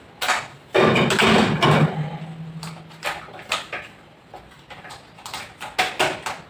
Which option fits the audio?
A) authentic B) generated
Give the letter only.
A